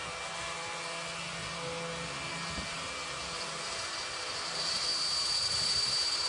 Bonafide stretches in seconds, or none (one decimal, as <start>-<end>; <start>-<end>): 0.0-2.7; 4.9-5.5